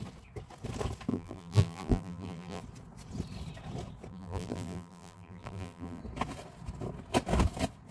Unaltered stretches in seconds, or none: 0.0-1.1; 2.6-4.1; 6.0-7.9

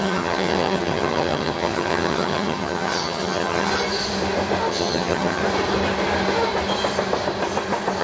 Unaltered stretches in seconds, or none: 3.7-4.7; 5.4-8.0

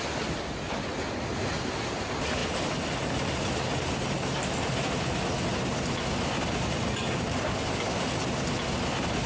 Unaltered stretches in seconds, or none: 0.0-9.3

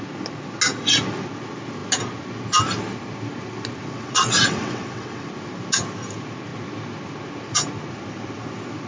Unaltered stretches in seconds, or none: 0.0-3.8; 5.3-8.9

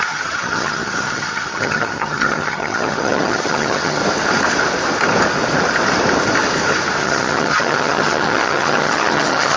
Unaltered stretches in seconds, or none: 4.0-7.0